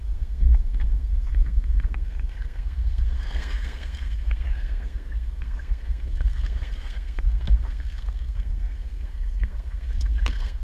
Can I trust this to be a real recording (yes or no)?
no